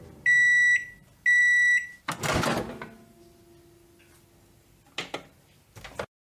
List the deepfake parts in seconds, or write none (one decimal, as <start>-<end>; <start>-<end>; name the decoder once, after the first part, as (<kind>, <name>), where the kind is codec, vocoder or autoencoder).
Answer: none